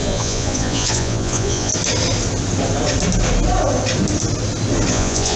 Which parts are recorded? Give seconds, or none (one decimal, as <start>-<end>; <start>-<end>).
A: 1.7-4.9